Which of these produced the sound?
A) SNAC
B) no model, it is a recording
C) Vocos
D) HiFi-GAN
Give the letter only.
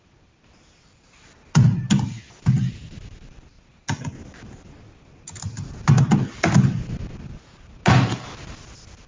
B